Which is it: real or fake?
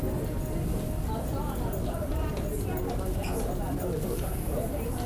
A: real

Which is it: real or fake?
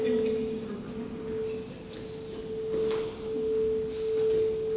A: real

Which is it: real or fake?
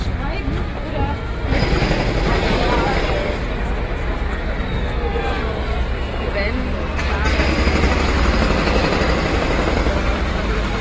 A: real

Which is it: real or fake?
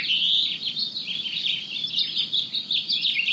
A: real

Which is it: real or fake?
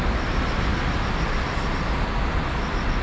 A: real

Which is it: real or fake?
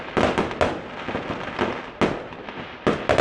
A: real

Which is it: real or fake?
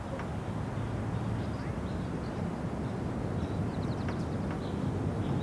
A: real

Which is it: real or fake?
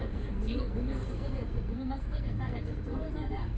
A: fake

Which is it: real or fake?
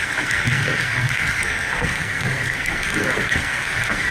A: fake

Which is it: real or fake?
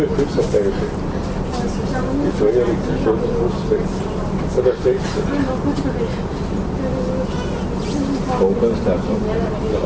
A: real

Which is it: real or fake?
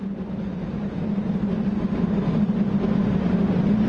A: real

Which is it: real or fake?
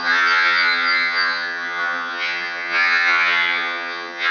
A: fake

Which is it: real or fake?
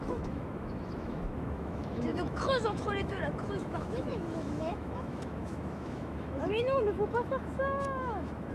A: fake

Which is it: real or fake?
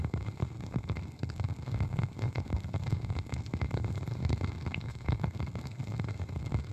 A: fake